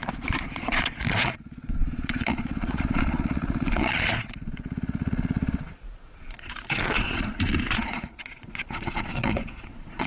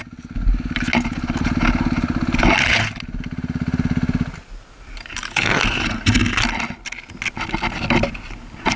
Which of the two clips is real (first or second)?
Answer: second